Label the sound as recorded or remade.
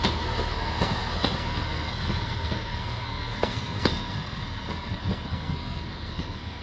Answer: remade